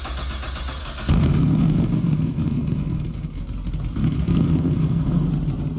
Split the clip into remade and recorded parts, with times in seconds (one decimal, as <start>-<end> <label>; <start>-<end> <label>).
0.0-0.8 recorded; 0.8-3.4 remade; 3.4-4.0 recorded; 4.0-5.3 remade; 5.3-5.8 recorded